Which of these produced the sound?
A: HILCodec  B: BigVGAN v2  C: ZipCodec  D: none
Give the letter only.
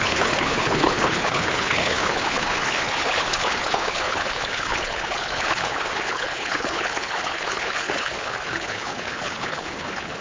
A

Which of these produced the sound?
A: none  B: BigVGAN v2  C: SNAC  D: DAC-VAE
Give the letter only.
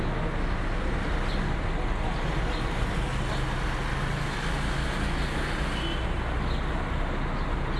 A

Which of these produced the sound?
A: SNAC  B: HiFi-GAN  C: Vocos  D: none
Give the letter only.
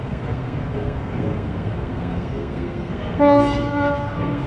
A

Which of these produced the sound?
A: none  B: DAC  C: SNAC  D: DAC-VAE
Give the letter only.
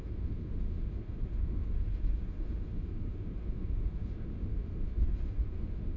D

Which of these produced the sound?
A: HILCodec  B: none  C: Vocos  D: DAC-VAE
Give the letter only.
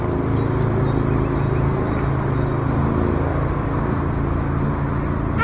B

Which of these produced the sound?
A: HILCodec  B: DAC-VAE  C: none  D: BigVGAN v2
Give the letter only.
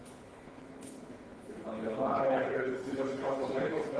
A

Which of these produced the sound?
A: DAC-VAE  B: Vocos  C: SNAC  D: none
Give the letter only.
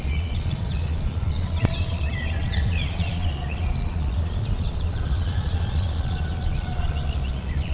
B